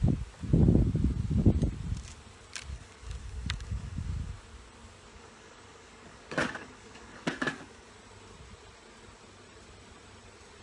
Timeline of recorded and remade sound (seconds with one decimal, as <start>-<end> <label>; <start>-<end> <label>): 0.0-2.7 recorded; 2.7-4.3 remade; 4.3-5.1 recorded; 5.1-7.9 remade; 7.9-10.6 recorded